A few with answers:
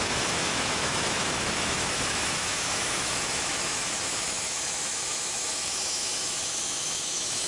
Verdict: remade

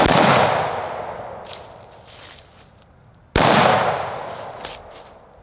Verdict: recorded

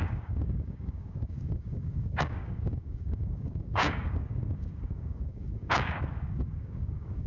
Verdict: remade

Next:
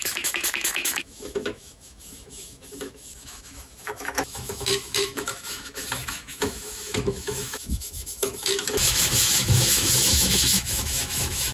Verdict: remade